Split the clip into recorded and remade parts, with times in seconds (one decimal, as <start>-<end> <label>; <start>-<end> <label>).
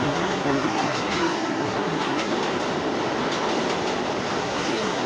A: 0.0-2.3 remade; 2.3-4.4 recorded; 4.4-5.1 remade